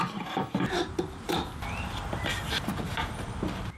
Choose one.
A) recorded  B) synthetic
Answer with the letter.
B